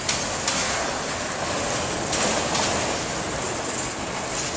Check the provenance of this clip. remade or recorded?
recorded